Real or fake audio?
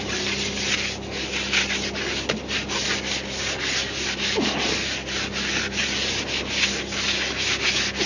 real